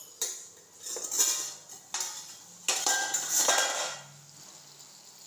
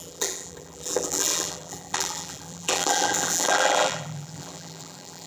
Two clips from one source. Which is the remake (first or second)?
second